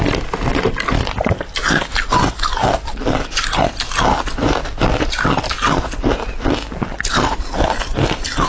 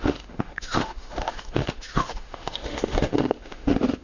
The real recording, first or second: first